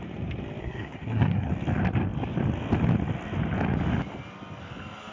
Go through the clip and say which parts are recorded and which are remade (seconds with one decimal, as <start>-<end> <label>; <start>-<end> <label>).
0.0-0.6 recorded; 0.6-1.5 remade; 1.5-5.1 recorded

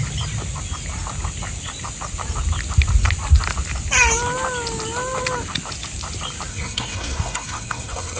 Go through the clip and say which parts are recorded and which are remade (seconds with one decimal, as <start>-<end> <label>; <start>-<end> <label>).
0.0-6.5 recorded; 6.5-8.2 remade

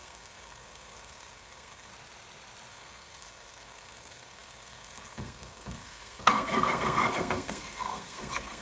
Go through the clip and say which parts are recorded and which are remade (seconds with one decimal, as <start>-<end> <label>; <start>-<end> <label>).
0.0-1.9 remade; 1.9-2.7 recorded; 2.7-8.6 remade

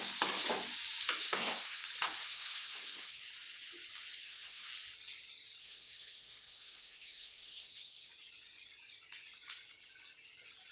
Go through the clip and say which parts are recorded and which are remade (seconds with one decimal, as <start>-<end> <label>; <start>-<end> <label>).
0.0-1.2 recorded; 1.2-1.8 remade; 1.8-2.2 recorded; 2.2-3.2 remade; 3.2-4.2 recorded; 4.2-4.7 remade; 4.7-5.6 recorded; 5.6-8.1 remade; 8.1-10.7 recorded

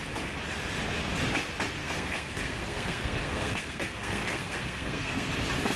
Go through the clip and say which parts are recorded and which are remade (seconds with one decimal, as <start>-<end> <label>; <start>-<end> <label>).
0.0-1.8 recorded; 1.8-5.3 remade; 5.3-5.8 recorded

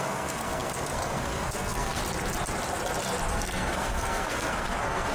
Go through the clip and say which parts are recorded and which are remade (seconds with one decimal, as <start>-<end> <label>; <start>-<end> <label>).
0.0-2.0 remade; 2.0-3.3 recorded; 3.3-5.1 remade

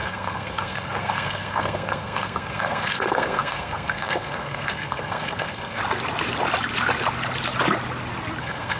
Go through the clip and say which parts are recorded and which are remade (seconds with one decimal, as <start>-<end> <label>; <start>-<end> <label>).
0.0-5.8 remade; 5.8-8.4 recorded; 8.4-8.8 remade

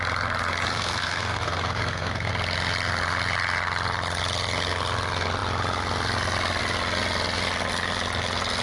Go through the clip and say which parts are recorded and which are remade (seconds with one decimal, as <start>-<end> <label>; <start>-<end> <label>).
0.0-0.7 recorded; 0.7-2.3 remade; 2.3-8.6 recorded